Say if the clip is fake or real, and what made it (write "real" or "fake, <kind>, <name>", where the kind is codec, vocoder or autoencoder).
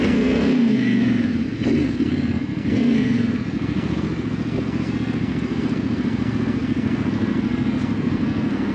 fake, codec, SNAC